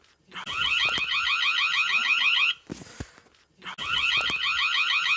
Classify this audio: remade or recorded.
recorded